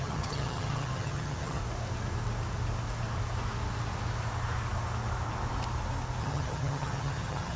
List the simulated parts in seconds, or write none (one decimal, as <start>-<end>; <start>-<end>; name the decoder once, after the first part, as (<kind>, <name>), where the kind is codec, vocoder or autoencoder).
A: 0.0-1.6 (vocoder, HiFi-GAN); 6.2-7.6